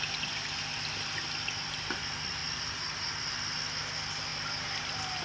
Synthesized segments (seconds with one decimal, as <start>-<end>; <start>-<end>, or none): none